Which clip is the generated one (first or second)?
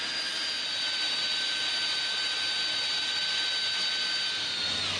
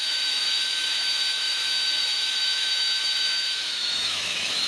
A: second